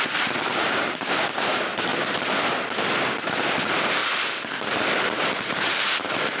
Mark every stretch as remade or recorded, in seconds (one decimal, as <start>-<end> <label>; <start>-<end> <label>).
0.0-1.9 remade; 1.9-3.6 recorded; 3.6-4.0 remade; 4.0-5.5 recorded; 5.5-6.4 remade